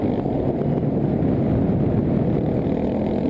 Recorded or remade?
recorded